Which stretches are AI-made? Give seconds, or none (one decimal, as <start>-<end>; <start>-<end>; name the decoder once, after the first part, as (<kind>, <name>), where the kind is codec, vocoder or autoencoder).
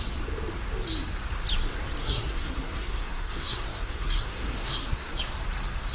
2.0-5.2 (codec, SNAC)